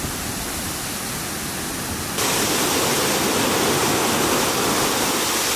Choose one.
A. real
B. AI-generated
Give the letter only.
A